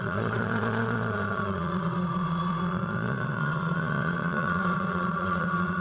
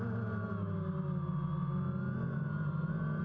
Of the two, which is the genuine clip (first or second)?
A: second